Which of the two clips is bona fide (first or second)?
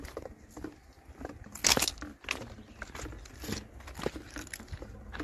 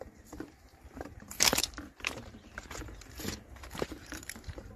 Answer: first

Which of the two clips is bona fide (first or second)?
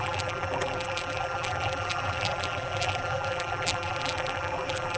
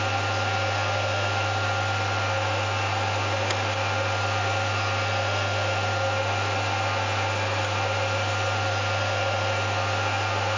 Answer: second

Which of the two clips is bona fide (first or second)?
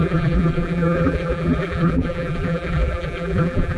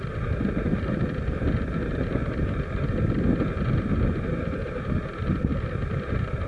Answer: second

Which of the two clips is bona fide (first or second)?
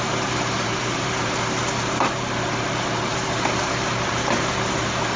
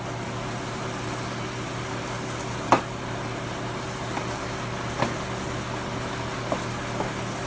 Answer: second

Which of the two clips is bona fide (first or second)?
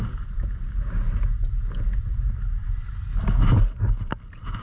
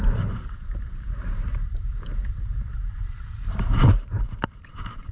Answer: first